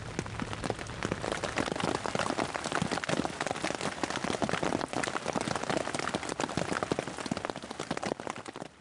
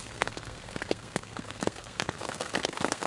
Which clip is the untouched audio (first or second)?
first